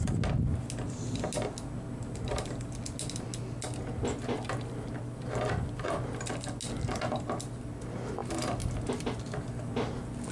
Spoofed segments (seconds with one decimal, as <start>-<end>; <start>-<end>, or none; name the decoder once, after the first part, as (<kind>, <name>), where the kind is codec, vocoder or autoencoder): none